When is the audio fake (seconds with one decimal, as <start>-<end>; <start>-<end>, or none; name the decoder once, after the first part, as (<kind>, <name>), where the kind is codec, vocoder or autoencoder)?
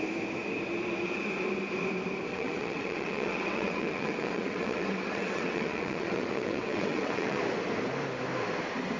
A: 2.3-7.4 (vocoder, WaveNeXt)